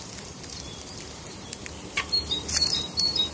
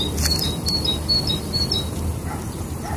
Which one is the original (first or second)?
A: second